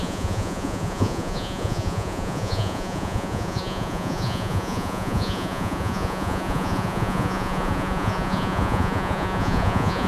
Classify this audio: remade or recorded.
remade